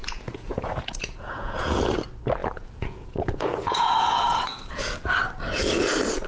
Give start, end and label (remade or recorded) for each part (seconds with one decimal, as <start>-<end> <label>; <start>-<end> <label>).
0.0-1.8 remade; 1.8-2.4 recorded; 2.4-4.8 remade; 4.8-6.3 recorded